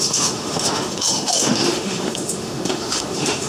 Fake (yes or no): yes